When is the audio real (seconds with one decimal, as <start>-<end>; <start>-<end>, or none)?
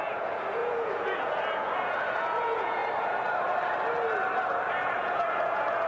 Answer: 2.8-4.7